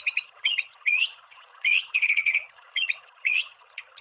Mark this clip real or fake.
fake